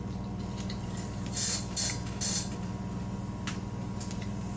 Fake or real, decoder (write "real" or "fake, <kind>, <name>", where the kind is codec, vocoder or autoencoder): real